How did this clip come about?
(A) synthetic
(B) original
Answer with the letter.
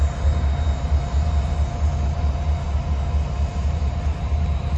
B